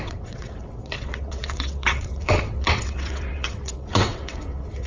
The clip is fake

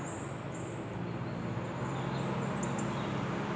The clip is real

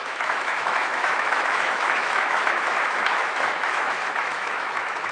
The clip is fake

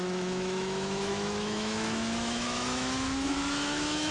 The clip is fake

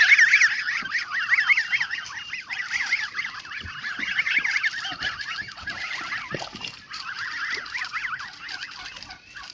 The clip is real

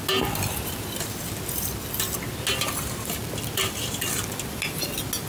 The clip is real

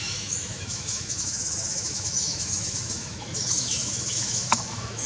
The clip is fake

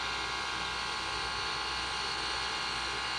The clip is real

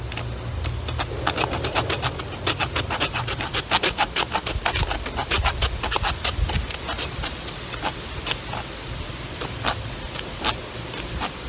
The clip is real